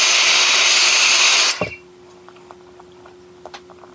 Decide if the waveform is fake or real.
real